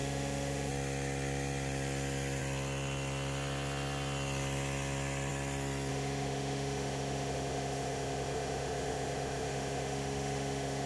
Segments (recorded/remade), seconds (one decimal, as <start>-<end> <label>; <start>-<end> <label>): 0.0-0.7 remade; 0.7-5.9 recorded; 5.9-10.9 remade